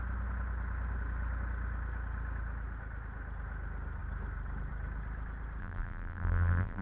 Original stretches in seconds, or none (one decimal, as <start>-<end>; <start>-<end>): 0.0-5.6